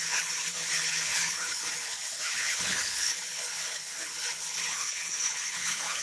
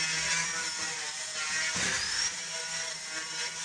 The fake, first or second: first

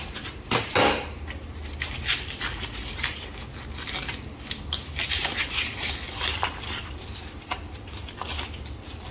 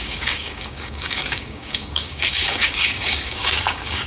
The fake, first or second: second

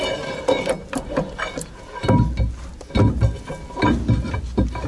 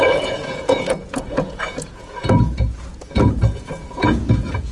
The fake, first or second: second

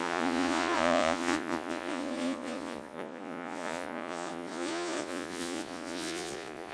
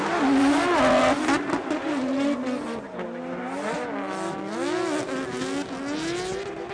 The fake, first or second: first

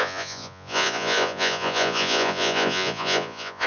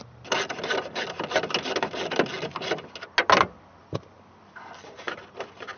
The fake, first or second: first